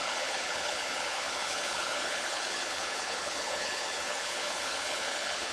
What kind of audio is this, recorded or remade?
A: remade